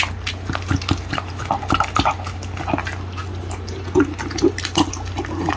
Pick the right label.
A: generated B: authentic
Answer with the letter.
B